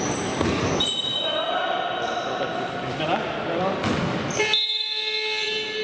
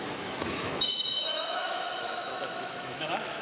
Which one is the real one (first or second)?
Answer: first